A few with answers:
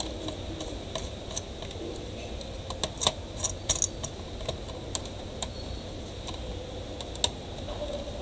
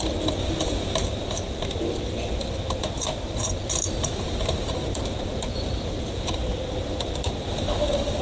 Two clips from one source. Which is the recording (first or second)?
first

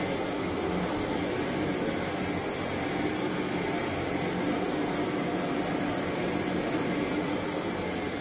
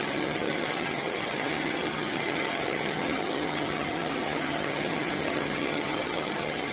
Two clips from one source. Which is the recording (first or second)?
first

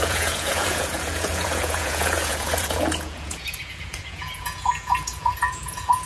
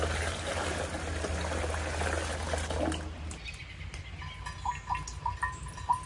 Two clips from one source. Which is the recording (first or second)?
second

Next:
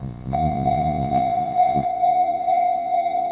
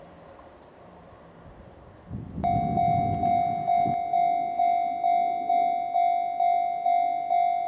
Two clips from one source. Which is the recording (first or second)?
second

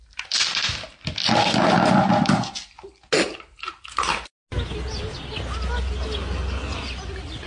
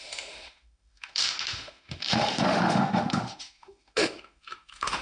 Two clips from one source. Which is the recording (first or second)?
first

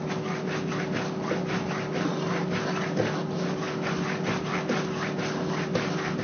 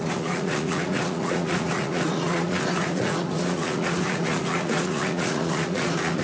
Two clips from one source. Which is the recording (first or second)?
first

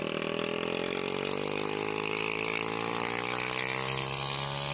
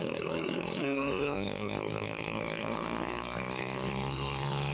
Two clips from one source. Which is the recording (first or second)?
first